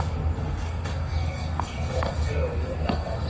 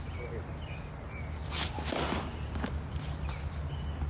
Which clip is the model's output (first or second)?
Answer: first